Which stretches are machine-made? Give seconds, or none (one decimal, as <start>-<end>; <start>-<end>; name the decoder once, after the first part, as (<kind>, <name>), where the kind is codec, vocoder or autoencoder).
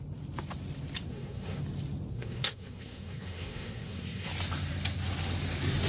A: 1.1-1.6 (codec, SNAC); 2.1-4.3